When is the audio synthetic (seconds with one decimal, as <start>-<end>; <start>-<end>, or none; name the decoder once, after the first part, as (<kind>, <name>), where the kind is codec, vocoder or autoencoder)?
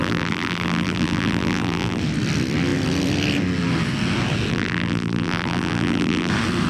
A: 0.0-2.0 (vocoder, BigVGAN v2); 4.5-6.3